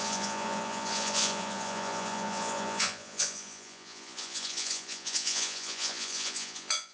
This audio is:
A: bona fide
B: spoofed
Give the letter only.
B